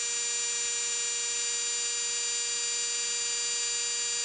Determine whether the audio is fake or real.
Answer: real